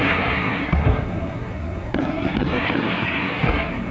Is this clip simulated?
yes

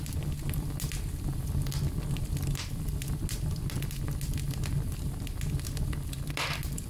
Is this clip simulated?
no